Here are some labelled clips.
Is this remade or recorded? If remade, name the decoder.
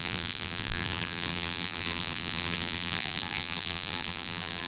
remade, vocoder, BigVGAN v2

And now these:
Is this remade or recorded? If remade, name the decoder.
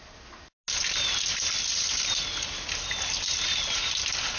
recorded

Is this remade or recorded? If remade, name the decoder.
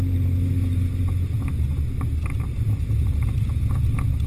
recorded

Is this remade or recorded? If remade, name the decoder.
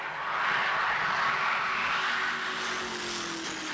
recorded